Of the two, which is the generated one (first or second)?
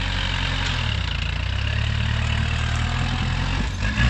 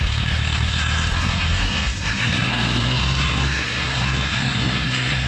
second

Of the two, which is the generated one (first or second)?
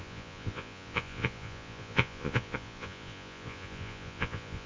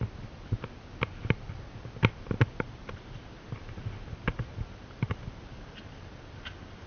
first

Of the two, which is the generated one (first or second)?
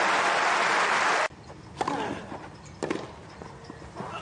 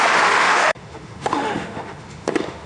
second